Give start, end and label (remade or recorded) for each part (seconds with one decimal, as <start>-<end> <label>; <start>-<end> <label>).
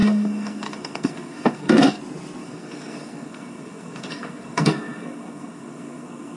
0.0-2.0 remade; 2.0-2.4 recorded; 2.4-6.4 remade